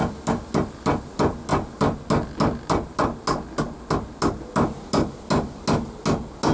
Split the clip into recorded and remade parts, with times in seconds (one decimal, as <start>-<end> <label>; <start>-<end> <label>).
0.0-6.5 recorded